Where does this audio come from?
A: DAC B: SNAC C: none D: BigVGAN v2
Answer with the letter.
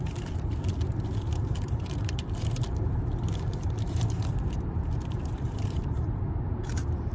D